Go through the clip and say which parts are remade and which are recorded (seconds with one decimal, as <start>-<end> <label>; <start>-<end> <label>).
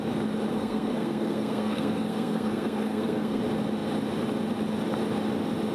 0.0-0.5 recorded; 0.5-3.4 remade; 3.4-5.7 recorded